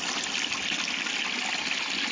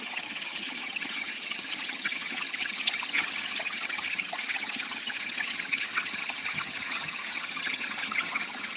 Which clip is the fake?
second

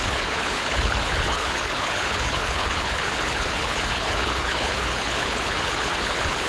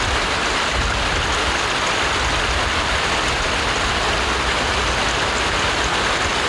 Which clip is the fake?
first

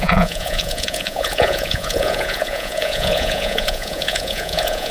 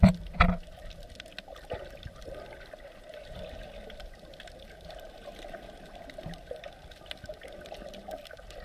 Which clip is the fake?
first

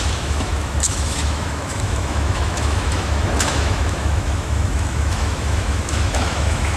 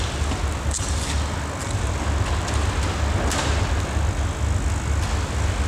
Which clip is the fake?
first